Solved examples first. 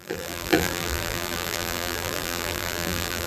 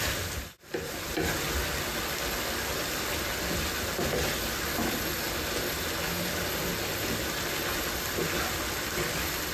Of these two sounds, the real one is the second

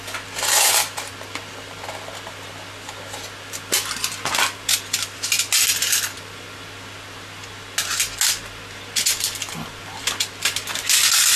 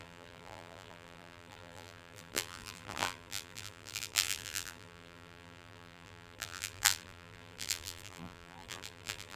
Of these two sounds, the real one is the first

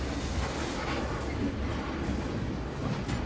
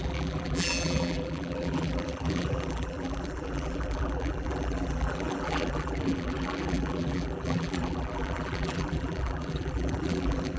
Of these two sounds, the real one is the first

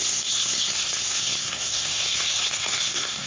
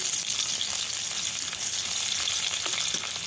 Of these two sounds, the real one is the second